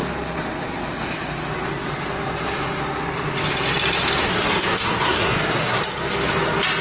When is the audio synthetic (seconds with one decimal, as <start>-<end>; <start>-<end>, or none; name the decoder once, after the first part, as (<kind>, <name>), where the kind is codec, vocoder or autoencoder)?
4.2-5.8 (codec, SNAC)